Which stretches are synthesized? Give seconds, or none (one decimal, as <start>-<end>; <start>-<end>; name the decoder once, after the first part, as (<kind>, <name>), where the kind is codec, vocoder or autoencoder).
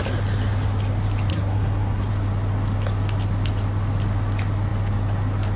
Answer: 1.3-2.1 (codec, SNAC)